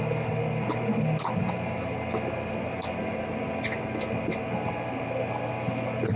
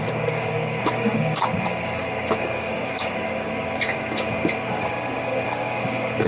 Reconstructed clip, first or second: second